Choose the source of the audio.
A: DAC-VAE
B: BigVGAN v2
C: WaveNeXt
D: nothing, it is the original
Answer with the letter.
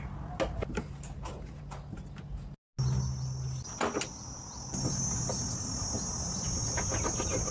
D